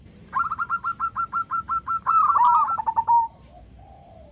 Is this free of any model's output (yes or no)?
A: no